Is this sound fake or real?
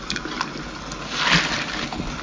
real